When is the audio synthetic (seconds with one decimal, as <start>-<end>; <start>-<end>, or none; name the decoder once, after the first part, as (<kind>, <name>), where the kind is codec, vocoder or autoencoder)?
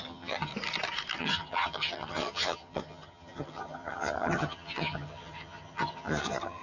0.0-0.5 (vocoder, HiFi-GAN); 1.2-6.6